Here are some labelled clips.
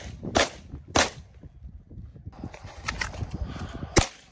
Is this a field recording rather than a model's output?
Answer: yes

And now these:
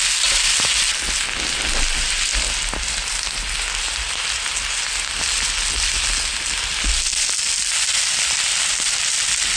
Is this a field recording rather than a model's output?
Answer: yes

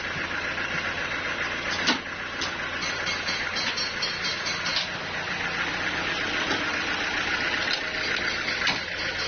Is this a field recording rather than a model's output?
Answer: yes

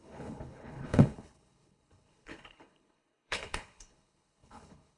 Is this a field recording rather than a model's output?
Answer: no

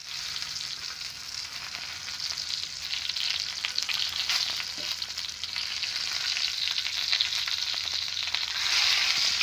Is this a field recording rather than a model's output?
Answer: yes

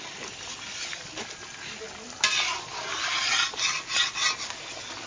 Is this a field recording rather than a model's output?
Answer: yes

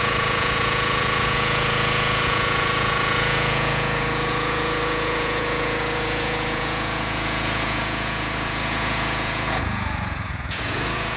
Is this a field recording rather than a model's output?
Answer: no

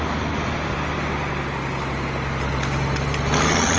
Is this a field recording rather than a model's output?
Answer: yes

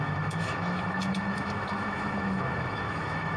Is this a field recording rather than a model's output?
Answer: no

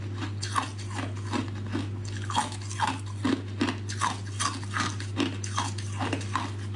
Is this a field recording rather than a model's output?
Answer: yes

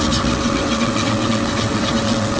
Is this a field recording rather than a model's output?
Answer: no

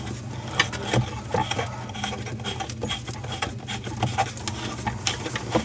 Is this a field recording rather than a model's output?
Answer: yes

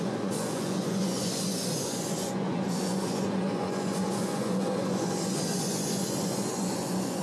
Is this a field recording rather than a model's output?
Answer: no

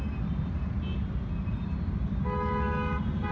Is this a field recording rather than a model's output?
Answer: yes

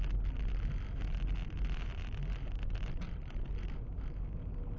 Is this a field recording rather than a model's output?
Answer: yes